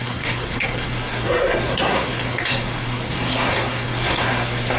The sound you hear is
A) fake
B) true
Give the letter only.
A